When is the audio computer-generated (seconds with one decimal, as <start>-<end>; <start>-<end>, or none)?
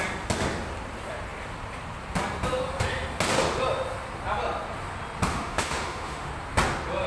5.3-6.3